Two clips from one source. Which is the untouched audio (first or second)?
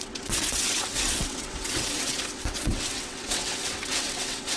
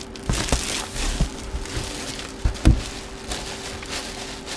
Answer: second